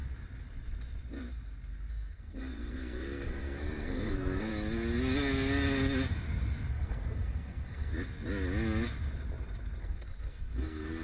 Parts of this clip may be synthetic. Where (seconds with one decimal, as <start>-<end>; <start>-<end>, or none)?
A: 1.9-4.5; 6.7-7.9; 9.8-11.0